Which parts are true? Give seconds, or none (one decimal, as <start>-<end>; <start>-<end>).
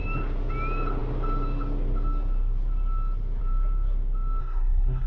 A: 0.0-4.4